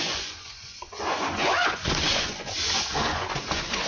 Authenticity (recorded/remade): remade